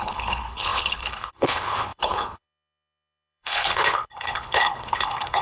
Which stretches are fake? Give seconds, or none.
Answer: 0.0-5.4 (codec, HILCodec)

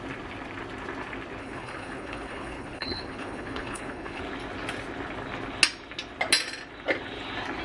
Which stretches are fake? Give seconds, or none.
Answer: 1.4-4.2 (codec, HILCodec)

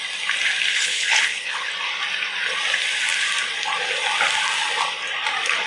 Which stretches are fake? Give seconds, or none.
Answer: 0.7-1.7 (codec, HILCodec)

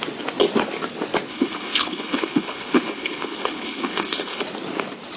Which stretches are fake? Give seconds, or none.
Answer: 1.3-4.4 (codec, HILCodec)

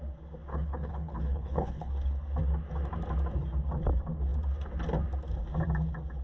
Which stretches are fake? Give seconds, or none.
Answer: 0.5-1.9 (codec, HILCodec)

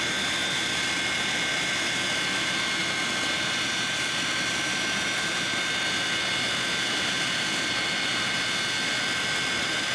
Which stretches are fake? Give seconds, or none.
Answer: none